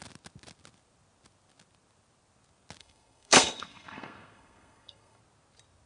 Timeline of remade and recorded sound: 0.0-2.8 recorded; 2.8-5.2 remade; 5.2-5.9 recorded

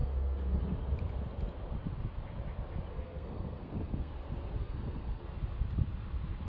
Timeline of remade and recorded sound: 0.0-0.6 remade; 0.6-2.9 recorded; 2.9-4.1 remade; 4.1-4.6 recorded; 4.6-5.2 remade; 5.2-6.5 recorded

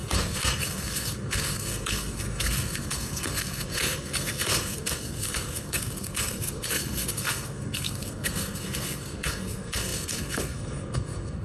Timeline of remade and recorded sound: 0.0-11.4 remade